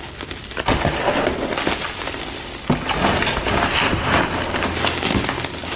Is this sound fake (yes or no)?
no